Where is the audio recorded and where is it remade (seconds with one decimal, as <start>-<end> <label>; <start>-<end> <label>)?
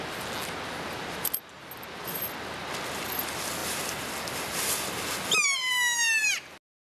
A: 0.0-7.0 recorded